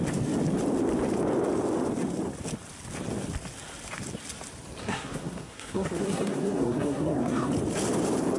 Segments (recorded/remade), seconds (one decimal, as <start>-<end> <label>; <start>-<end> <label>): 0.0-4.8 recorded; 4.8-7.5 remade; 7.5-8.4 recorded